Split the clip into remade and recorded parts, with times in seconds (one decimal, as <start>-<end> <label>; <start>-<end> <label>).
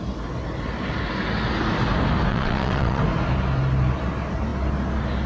0.0-2.3 recorded; 2.3-3.0 remade; 3.0-5.3 recorded